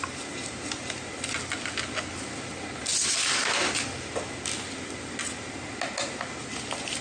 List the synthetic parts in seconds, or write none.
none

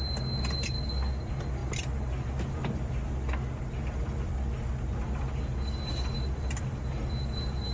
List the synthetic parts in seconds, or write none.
none

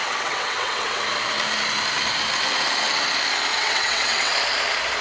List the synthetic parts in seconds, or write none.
0.0-1.0; 3.5-4.3

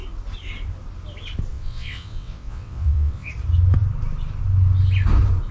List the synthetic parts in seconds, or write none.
1.5-3.3